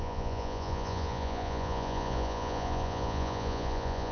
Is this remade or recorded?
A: remade